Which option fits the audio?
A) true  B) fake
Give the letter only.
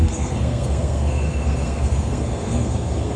B